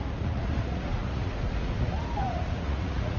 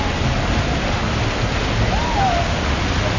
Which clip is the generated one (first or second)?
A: first